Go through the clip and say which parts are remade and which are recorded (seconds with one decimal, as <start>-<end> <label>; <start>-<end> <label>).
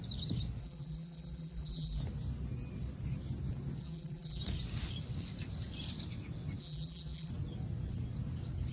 0.0-0.6 recorded; 0.6-2.0 remade; 2.0-3.8 recorded; 3.8-4.4 remade; 4.4-6.6 recorded; 6.6-7.3 remade; 7.3-8.7 recorded